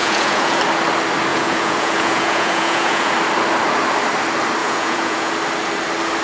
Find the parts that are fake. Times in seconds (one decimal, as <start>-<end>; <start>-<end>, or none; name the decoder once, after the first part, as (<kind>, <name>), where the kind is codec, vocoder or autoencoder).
0.0-0.6 (vocoder, Vocos); 1.3-3.1; 4.6-5.3